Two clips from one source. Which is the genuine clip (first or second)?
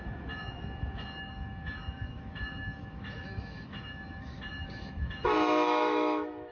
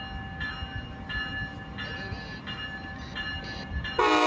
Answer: second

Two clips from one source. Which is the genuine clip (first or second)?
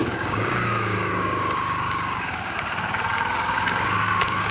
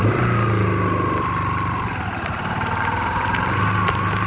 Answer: second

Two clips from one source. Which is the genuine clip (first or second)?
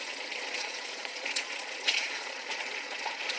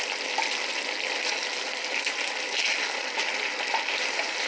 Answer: second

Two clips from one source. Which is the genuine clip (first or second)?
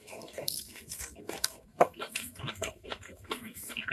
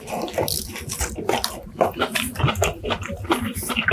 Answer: second